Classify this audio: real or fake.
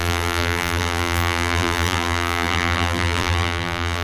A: fake